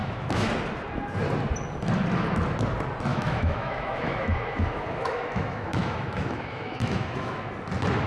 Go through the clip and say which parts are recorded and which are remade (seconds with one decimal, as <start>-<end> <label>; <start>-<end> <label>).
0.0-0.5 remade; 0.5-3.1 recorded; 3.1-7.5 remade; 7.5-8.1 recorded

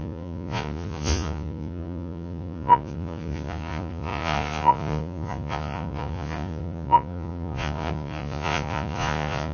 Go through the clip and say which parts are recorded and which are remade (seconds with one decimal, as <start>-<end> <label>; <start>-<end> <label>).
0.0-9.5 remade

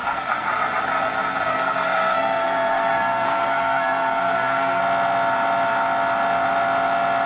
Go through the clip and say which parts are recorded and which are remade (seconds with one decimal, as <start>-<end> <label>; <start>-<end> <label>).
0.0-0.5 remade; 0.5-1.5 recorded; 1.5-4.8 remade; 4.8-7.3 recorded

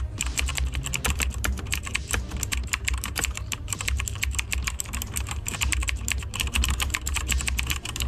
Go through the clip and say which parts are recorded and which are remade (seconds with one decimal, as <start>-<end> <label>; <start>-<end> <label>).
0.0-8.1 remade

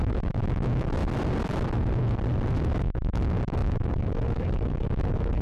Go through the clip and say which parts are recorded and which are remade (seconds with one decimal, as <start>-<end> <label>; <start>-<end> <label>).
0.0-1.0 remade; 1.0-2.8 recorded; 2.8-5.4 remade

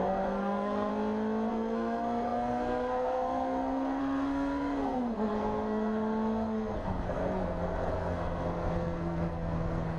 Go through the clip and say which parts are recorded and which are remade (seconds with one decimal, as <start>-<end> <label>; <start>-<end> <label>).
0.0-0.9 remade; 0.9-1.5 recorded; 1.5-10.0 remade

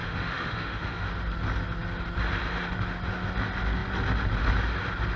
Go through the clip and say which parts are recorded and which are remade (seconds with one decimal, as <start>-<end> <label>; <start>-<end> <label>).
0.0-1.1 remade; 1.1-5.2 recorded

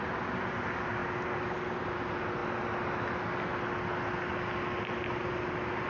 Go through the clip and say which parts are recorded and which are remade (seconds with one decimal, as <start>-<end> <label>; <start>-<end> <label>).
0.0-5.9 recorded